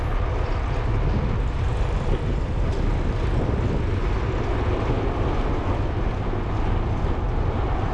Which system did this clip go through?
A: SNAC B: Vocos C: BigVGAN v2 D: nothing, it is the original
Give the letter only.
D